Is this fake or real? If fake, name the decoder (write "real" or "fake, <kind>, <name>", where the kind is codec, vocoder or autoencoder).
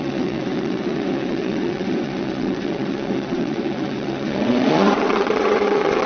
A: fake, vocoder, WaveNeXt